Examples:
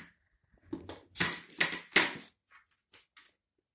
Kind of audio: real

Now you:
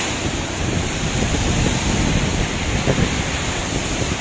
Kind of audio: fake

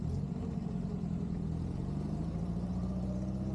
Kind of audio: fake